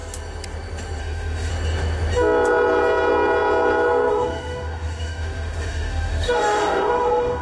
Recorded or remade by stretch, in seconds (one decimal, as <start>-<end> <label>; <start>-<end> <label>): 0.0-1.0 recorded; 1.0-1.5 remade; 1.5-4.1 recorded; 4.1-7.4 remade